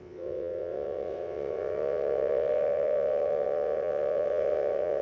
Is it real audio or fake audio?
fake